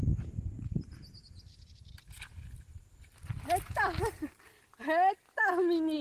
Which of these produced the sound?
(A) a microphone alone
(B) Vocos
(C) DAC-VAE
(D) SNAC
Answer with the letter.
A